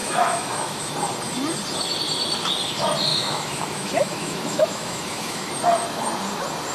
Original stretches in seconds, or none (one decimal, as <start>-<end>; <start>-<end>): 0.9-3.1; 5.5-6.7